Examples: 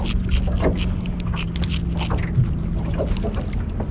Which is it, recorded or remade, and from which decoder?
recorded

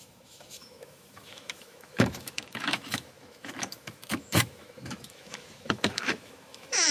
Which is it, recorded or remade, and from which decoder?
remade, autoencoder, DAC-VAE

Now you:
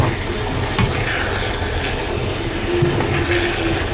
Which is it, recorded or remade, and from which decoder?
recorded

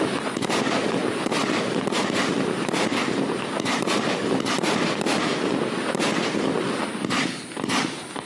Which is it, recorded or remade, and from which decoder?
recorded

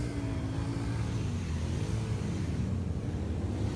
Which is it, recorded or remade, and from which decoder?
recorded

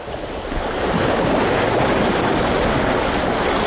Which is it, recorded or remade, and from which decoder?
recorded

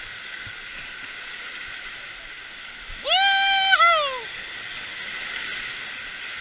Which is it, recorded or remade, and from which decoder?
recorded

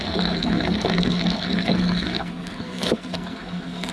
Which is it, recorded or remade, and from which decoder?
remade, codec, SNAC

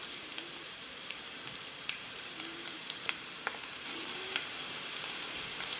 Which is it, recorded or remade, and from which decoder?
remade, vocoder, BigVGAN v2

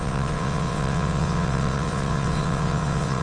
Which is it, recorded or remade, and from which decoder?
remade, vocoder, WaveNeXt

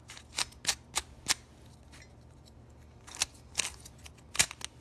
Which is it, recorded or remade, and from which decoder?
recorded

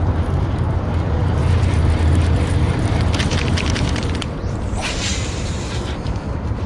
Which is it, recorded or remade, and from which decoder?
remade, vocoder, BigVGAN v2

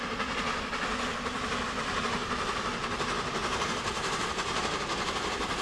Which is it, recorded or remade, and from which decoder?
recorded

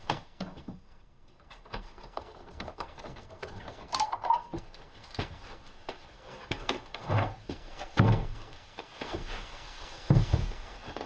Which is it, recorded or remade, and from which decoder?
remade, codec, SNAC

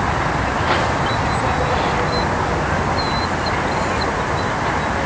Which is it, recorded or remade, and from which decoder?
recorded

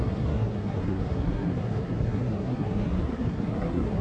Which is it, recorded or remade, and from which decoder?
remade, codec, SNAC